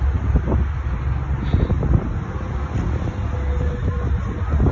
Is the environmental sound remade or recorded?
recorded